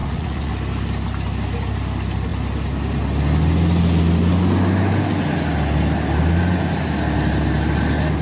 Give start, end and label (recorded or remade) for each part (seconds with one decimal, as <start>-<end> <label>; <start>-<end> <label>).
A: 0.0-0.5 remade; 0.5-8.2 recorded